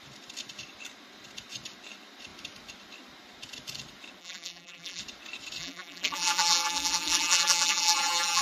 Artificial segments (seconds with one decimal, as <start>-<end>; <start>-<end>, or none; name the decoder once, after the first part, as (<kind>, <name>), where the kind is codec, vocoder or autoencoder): 4.2-5.0 (vocoder, BigVGAN v2); 5.6-8.4